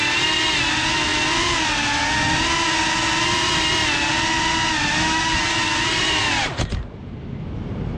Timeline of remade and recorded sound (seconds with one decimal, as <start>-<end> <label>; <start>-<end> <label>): 0.0-1.1 recorded; 1.1-1.7 remade; 1.7-3.8 recorded; 3.8-4.4 remade; 4.4-8.0 recorded